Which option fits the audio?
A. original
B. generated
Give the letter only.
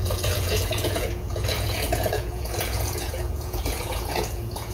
B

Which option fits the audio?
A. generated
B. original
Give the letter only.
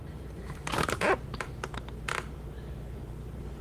A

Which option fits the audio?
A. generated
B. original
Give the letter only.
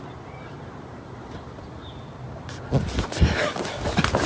B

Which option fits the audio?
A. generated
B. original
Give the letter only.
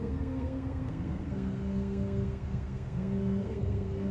A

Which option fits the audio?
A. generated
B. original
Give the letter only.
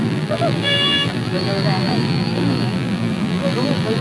A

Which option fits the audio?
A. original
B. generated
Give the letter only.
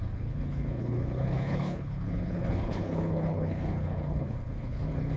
B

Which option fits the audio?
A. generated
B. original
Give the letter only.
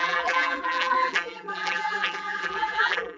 A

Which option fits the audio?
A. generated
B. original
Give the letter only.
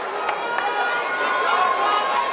B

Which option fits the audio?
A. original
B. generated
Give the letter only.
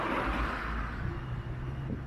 A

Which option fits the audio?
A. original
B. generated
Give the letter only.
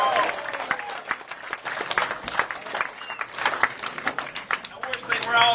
A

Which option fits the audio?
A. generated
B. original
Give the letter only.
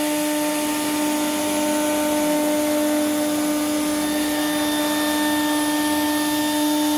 B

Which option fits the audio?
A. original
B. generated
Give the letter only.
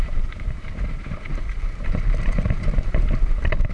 B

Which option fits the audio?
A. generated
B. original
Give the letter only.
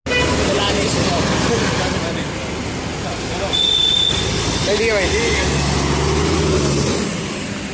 B